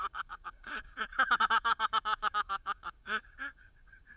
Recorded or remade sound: remade